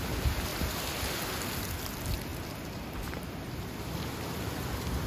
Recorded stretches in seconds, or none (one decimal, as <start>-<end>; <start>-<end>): 0.0-0.5; 1.6-2.3